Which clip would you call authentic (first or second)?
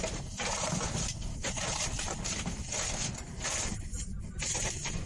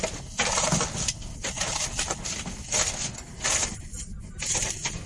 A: second